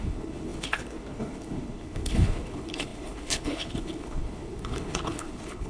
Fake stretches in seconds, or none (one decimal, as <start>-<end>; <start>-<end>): 0.0-5.7